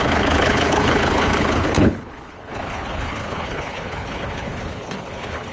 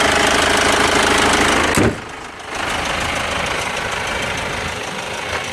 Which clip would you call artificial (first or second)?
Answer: first